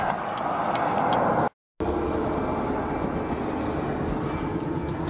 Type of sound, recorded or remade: recorded